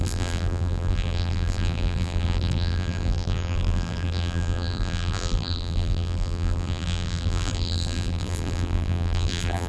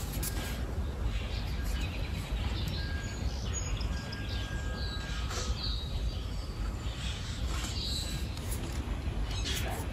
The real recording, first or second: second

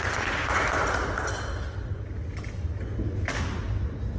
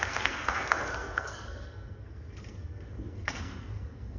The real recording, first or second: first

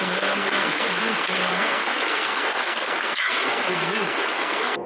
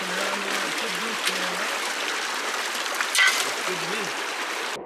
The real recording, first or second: second